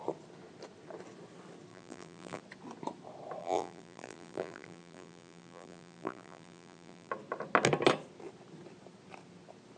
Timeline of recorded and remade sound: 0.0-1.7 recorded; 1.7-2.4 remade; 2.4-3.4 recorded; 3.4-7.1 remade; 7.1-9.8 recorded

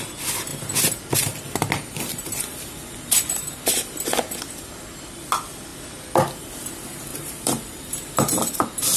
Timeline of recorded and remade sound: 0.0-7.1 recorded; 7.1-7.8 remade; 7.8-9.0 recorded

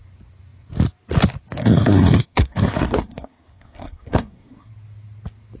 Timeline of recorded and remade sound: 0.0-1.6 recorded; 1.6-4.7 remade; 4.7-5.6 recorded